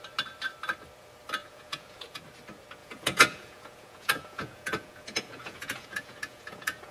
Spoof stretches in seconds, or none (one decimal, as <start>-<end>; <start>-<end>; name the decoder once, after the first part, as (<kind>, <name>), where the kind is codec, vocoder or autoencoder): 1.4-2.2 (vocoder, Vocos); 2.8-6.9